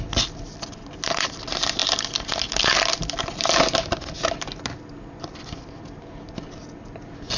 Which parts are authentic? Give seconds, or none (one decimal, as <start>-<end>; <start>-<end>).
0.0-7.4

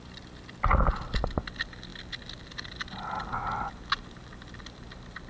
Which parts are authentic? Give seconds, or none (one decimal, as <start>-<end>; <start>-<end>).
0.0-5.3

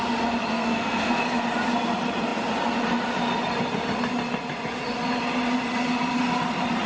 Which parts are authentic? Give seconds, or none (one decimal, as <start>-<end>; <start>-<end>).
0.0-0.5; 1.2-6.9